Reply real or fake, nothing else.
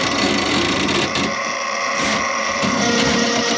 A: real